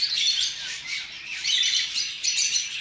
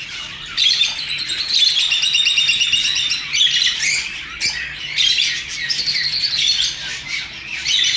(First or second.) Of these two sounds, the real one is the second